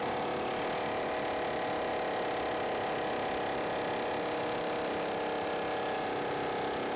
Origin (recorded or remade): recorded